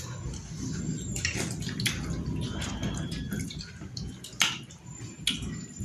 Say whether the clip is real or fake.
real